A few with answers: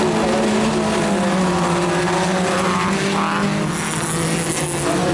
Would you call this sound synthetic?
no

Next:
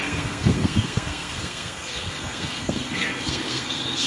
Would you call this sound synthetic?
yes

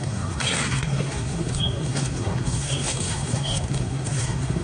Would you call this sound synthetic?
yes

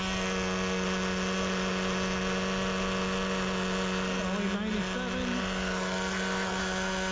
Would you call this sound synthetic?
no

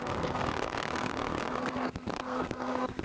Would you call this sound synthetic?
yes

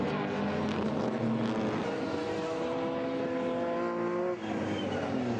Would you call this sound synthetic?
no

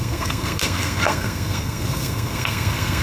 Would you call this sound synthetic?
yes